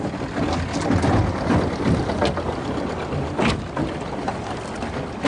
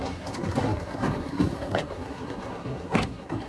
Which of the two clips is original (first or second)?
first